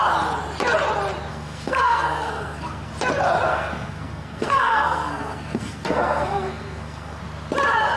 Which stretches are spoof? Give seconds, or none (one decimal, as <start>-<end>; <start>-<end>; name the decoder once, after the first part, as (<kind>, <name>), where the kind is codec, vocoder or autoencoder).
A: 1.3-2.9 (codec, SNAC); 3.5-7.2